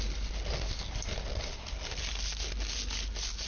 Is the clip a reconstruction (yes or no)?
no